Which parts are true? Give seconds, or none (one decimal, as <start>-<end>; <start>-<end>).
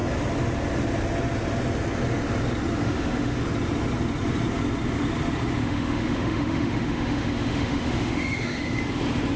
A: 0.0-2.8; 3.4-5.6; 8.8-9.4